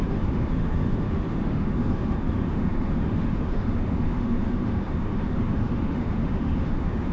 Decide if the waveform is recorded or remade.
remade